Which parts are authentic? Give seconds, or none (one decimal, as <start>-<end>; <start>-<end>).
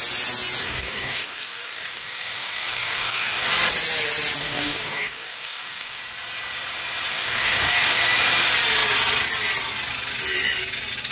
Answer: 0.0-0.6; 3.5-4.4; 6.0-7.1; 8.0-11.1